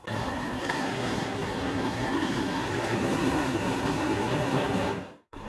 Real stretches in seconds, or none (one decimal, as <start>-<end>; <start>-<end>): none